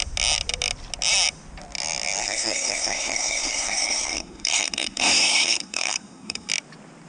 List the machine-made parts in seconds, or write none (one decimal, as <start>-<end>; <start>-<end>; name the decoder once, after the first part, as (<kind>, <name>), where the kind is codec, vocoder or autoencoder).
2.2-6.5 (codec, SNAC)